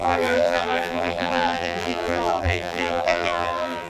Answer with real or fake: fake